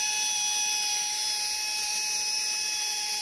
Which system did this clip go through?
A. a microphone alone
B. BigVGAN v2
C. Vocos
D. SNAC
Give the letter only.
A